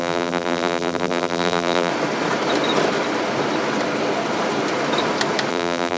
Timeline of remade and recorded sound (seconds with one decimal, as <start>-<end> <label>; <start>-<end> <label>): 0.0-1.9 remade; 1.9-5.5 recorded; 5.5-6.0 remade